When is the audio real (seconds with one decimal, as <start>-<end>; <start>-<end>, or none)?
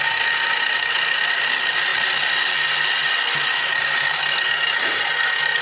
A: 0.0-5.6